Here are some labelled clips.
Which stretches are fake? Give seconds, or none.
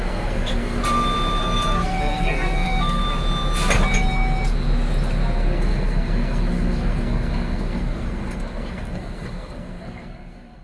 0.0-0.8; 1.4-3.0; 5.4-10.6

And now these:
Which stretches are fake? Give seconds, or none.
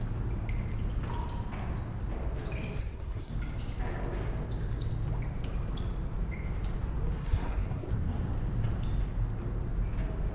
2.8-3.3; 7.2-7.9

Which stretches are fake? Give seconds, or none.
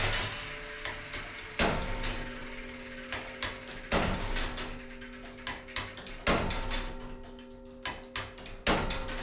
none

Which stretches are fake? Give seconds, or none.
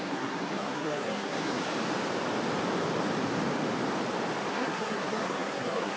0.0-1.6; 4.5-6.0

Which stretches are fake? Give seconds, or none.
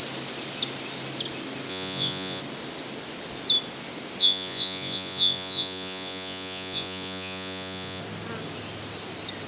1.7-2.4; 4.2-8.0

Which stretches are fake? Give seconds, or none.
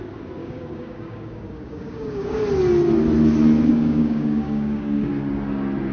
0.4-2.4; 3.7-5.1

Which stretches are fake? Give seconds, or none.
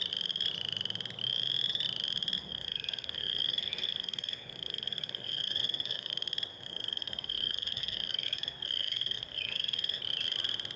2.4-6.1; 6.5-10.0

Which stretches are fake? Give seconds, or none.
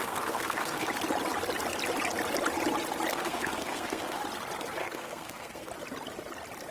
0.0-0.9; 3.1-4.2; 4.8-5.7